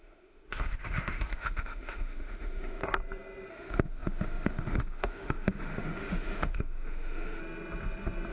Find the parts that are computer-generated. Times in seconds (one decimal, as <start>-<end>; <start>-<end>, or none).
0.0-2.8; 3.5-7.4